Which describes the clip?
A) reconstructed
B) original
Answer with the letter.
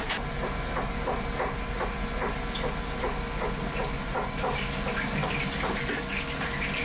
B